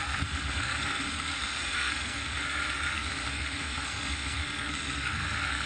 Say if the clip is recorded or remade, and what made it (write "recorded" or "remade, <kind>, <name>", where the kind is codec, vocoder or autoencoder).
remade, codec, SNAC